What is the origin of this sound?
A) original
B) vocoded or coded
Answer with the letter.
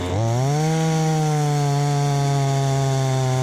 A